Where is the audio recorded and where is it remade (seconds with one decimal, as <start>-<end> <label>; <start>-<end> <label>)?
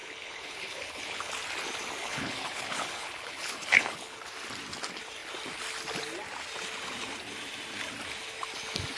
0.0-1.3 remade; 1.3-2.0 recorded; 2.0-4.3 remade; 4.3-9.0 recorded